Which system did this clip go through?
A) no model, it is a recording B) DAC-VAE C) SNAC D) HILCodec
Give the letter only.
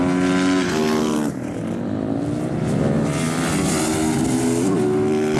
A